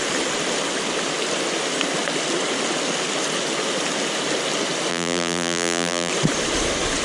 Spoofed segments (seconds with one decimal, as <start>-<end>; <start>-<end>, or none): 4.9-6.1